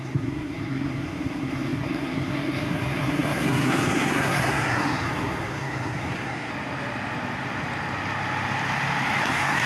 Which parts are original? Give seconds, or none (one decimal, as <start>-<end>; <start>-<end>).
6.5-9.2